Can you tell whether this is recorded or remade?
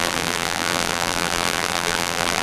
remade